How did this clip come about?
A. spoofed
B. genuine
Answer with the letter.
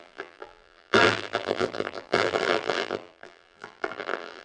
A